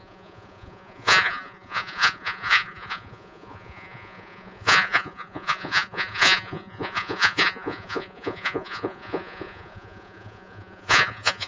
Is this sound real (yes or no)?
no